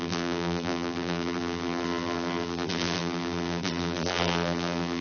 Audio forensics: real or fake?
fake